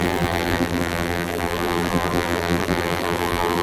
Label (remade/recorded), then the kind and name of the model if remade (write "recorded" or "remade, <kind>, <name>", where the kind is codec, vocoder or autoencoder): remade, vocoder, BigVGAN v2